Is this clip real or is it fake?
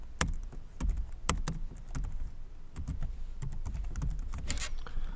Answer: real